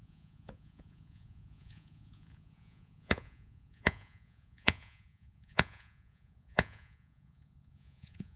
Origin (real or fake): fake